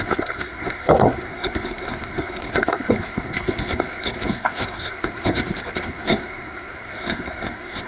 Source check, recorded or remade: remade